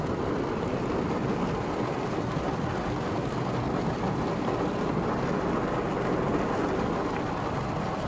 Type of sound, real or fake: real